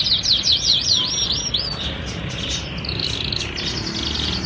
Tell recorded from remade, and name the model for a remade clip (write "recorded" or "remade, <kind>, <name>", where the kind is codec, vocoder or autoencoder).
recorded